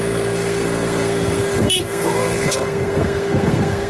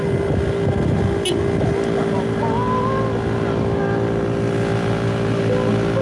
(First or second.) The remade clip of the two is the first